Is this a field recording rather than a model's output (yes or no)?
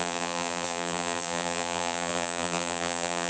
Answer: no